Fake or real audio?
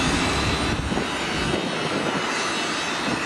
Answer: real